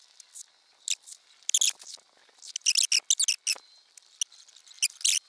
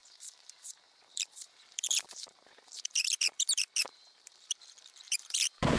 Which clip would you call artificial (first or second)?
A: second